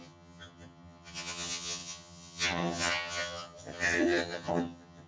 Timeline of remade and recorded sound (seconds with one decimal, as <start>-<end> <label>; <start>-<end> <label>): 0.0-5.1 remade